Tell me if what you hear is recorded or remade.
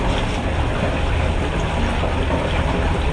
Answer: recorded